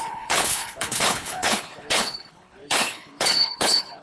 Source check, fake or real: fake